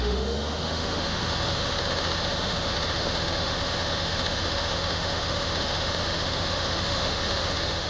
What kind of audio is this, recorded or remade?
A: remade